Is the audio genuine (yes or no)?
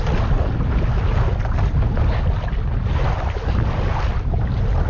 yes